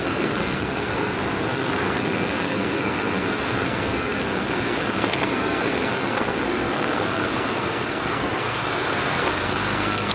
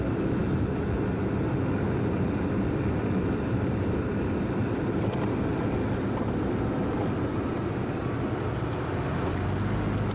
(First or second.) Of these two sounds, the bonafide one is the second